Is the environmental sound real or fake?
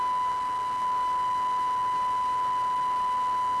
real